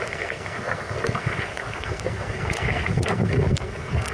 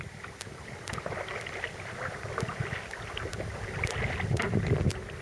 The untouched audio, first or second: second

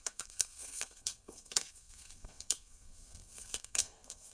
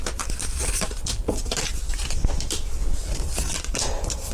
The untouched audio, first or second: second